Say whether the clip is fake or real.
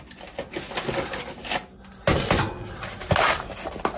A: real